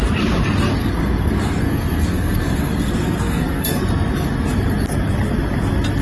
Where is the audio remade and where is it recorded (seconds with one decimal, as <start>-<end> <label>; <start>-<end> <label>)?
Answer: 0.0-0.8 recorded; 0.8-3.8 remade; 3.8-6.0 recorded